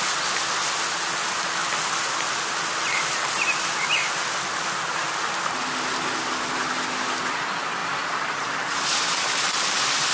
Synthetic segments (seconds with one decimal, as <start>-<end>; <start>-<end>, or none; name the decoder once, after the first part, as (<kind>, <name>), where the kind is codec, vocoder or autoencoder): none